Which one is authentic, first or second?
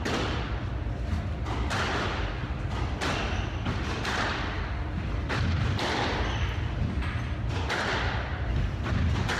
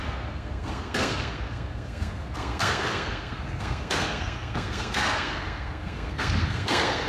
first